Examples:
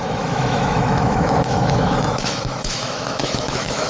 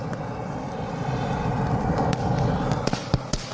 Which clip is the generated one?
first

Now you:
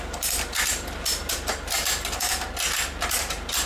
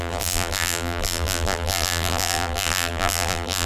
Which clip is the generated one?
second